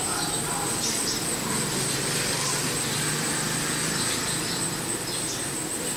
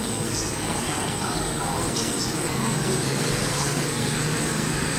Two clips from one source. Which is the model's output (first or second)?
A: second